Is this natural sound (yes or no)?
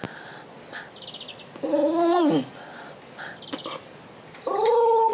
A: yes